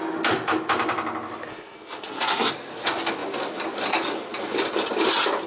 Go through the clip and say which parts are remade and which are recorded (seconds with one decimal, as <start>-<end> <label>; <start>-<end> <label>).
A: 0.0-1.5 recorded; 1.5-2.5 remade; 2.5-5.5 recorded